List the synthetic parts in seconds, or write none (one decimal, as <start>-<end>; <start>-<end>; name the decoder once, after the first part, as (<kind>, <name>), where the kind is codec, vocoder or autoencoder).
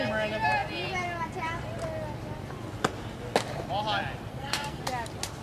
4.3-4.8 (codec, SNAC)